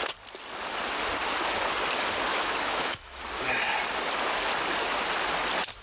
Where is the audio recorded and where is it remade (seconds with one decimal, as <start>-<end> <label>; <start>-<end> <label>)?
0.0-2.3 recorded; 2.3-3.2 remade; 3.2-5.8 recorded